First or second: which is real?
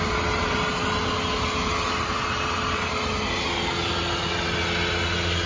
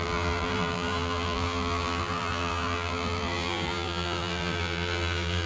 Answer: first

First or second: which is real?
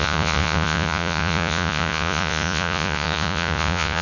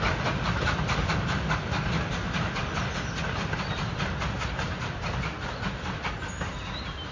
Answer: second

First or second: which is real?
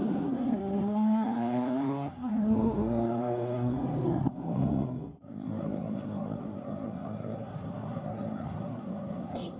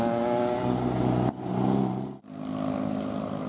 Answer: second